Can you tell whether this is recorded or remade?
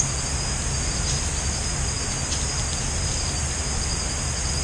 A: recorded